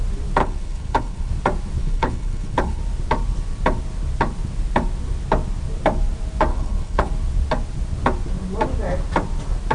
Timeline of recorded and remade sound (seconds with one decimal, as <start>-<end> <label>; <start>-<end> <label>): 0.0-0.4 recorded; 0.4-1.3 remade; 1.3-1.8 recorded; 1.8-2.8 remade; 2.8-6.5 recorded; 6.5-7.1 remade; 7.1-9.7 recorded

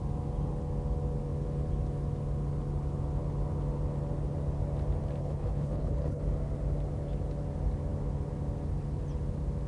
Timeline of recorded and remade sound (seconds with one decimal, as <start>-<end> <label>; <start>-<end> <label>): 0.0-5.2 recorded; 5.2-6.2 remade; 6.2-9.7 recorded

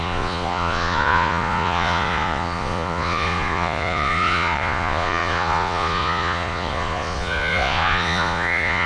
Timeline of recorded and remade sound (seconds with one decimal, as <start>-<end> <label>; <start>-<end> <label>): 0.0-8.9 remade

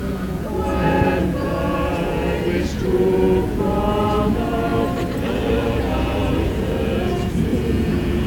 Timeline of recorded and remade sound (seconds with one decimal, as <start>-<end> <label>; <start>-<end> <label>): 0.0-4.7 remade; 4.7-5.8 recorded; 5.8-8.3 remade

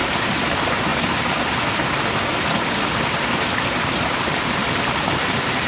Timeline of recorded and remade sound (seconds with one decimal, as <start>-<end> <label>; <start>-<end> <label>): 0.0-0.9 remade; 0.9-4.3 recorded; 4.3-5.7 remade

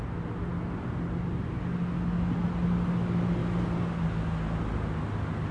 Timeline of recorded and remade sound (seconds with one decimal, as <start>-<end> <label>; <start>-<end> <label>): 0.0-5.5 recorded